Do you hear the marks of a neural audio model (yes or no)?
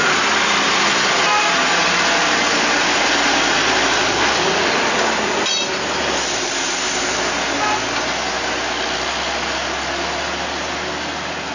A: no